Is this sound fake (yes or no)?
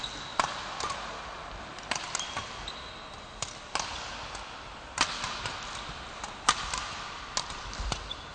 no